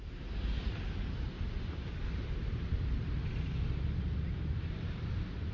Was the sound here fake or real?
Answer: fake